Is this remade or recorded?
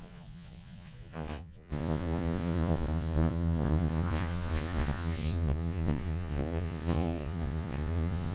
remade